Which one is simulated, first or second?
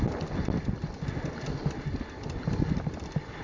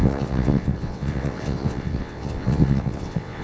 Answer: second